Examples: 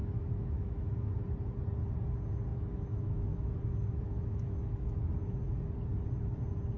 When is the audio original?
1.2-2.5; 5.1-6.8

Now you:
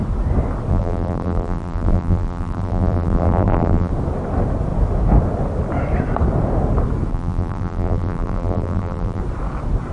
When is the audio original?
0.0-0.7; 3.9-7.1; 9.2-9.9

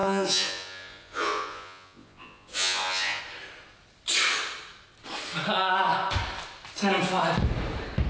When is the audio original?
3.2-8.1

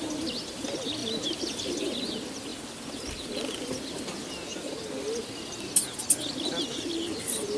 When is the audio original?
0.0-7.6

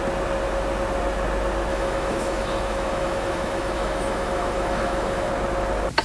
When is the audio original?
0.0-1.7; 5.3-6.0

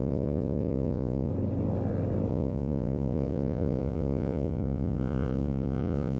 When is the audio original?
1.3-2.3

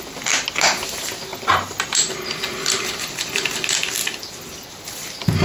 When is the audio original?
0.0-1.3; 3.0-4.0